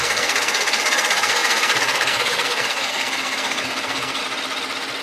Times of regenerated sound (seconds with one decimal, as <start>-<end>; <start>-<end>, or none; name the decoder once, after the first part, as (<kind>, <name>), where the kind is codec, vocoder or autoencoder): 0.0-4.2 (codec, SNAC)